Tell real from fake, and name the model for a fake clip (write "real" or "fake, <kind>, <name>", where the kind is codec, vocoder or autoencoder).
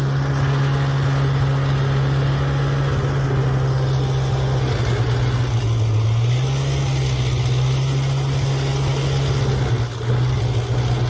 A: real